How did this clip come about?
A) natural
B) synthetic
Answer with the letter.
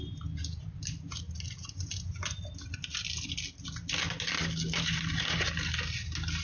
A